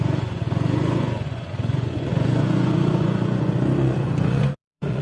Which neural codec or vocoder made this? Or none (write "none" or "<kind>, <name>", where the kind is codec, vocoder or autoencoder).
vocoder, Vocos